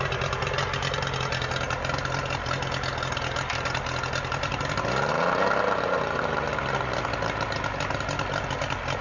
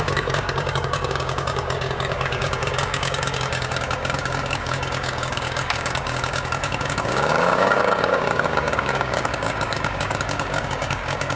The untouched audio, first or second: first